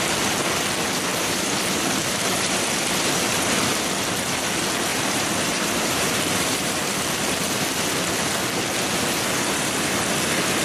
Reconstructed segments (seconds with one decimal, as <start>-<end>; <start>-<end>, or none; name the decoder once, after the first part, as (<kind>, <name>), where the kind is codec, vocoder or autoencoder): 1.1-2.8 (vocoder, BigVGAN v2); 4.9-7.2